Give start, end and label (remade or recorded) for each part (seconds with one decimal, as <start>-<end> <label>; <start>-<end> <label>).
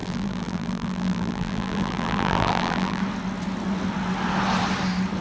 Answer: 0.0-3.0 remade; 3.0-5.2 recorded